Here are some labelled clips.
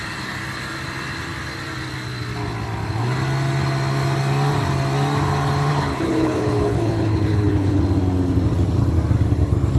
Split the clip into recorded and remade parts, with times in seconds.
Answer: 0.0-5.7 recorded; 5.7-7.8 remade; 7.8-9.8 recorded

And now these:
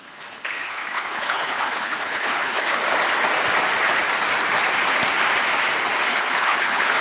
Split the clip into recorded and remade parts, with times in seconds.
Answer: 0.0-2.8 remade; 2.8-6.1 recorded; 6.1-7.0 remade

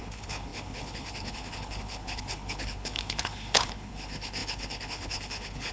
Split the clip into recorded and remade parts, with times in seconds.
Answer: 0.0-5.7 remade

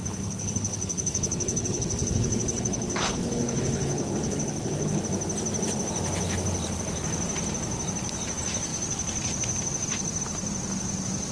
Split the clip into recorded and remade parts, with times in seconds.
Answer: 0.0-5.0 remade; 5.0-11.3 recorded

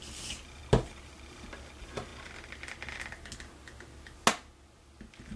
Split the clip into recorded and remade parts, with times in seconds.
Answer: 0.0-5.4 recorded